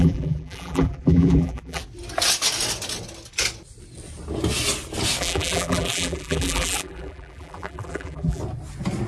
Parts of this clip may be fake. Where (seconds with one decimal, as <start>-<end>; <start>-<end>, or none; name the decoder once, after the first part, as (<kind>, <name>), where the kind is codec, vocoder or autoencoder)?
0.0-1.8 (vocoder, BigVGAN v2); 5.2-8.4